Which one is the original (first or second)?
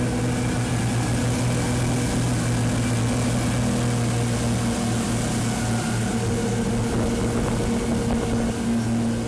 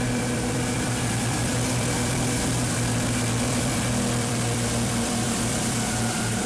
first